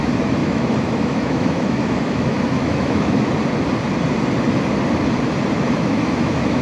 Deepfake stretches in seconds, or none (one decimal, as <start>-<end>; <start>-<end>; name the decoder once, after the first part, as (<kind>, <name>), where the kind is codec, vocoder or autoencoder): 0.4-3.3 (autoencoder, DAC-VAE); 5.9-6.6